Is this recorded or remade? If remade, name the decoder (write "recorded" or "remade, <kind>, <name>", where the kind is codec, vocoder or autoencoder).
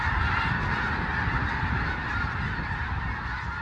recorded